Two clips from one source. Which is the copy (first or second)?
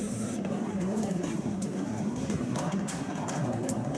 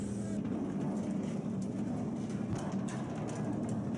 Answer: first